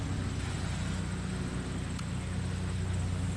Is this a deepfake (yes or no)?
no